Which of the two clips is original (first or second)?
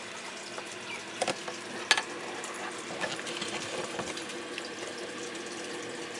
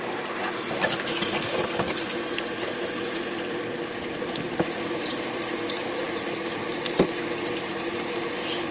first